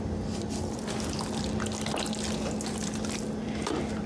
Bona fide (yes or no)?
yes